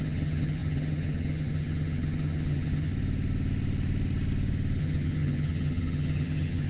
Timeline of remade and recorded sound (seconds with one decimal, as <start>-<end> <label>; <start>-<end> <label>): 0.0-2.9 remade; 2.9-4.8 recorded; 4.8-6.7 remade